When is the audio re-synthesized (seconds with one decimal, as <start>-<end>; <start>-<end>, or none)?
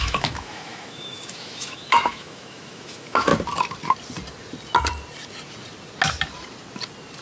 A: 0.0-3.3